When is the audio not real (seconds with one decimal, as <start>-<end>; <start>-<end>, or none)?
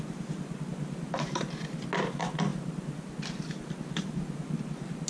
none